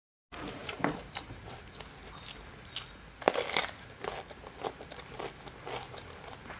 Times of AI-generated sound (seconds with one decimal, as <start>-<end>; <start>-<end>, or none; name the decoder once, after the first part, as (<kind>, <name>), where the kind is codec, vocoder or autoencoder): 0.6-1.6 (vocoder, BigVGAN v2)